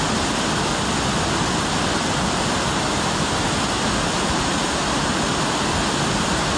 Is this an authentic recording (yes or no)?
yes